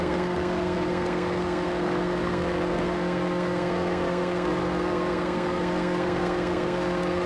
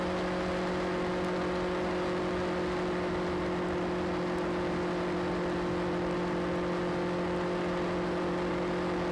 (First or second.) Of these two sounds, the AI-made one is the first